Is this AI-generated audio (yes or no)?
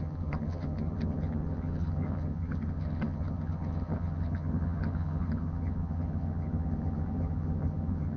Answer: yes